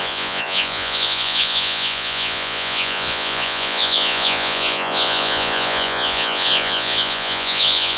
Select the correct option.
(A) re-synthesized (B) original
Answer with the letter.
A